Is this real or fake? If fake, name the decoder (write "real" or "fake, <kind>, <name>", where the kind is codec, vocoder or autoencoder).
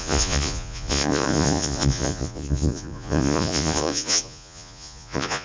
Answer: fake, vocoder, Vocos